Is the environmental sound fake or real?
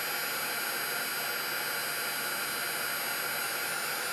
real